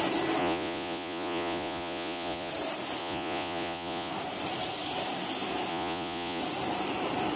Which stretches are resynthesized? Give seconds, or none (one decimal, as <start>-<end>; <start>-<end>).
0.4-2.5; 3.0-4.1; 5.7-6.4